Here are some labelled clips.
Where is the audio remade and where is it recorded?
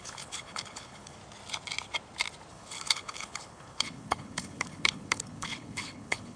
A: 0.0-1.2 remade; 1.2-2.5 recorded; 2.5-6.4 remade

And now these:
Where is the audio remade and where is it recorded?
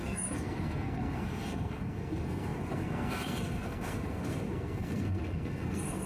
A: 0.0-6.1 remade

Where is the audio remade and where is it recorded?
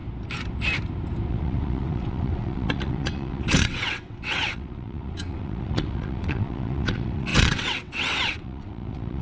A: 0.0-1.3 recorded; 1.3-9.2 remade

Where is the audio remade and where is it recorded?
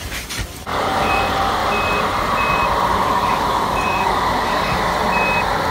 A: 0.0-0.7 recorded; 0.7-1.2 remade; 1.2-2.9 recorded; 2.9-4.9 remade; 4.9-5.7 recorded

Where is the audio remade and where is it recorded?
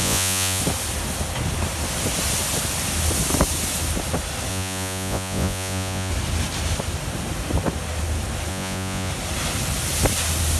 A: 0.0-0.6 remade; 0.6-4.5 recorded; 4.5-6.1 remade; 6.1-8.5 recorded; 8.5-9.1 remade; 9.1-10.6 recorded